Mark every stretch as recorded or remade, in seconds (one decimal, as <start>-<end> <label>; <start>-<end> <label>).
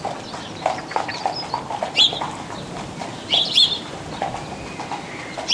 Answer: 0.0-3.0 recorded; 3.0-3.8 remade; 3.8-5.5 recorded